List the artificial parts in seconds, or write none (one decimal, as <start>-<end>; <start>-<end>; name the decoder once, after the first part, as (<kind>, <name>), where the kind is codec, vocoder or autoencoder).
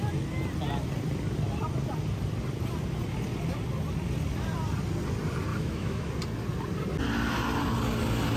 5.5-6.1 (autoencoder, DAC-VAE)